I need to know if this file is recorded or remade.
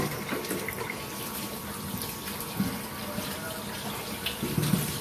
recorded